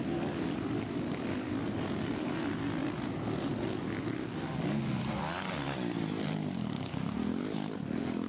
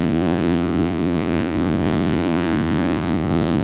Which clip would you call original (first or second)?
first